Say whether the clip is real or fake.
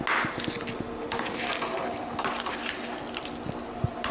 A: real